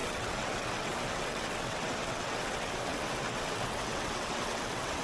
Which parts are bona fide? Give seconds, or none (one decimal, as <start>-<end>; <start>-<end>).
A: none